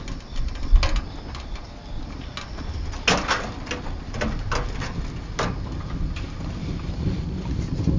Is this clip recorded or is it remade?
recorded